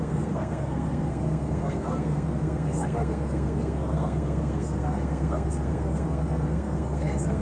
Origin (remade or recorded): remade